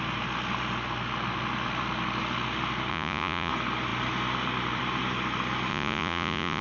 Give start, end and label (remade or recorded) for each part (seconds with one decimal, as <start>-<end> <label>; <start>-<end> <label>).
0.0-2.9 recorded; 2.9-3.5 remade; 3.5-5.7 recorded; 5.7-6.6 remade